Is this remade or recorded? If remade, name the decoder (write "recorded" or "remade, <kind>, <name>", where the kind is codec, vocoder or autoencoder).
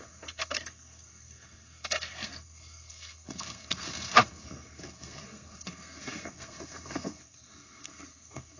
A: remade, codec, SNAC